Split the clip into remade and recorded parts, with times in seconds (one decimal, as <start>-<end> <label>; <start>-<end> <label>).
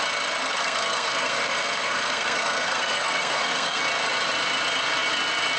0.0-0.4 recorded; 0.4-3.8 remade; 3.8-5.6 recorded